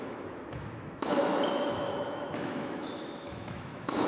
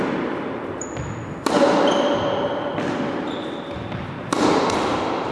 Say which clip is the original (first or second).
second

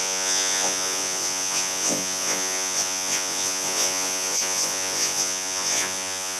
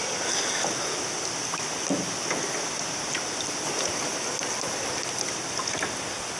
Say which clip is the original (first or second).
second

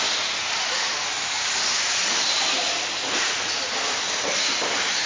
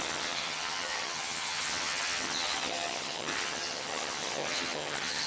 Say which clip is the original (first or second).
first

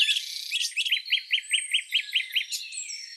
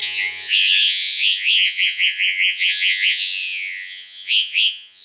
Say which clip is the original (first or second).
first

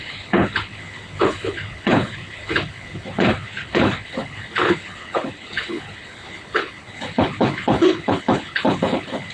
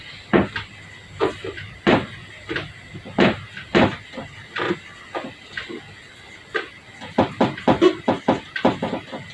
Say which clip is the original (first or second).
second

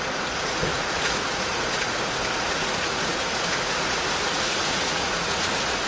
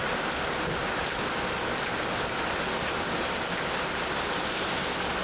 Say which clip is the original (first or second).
second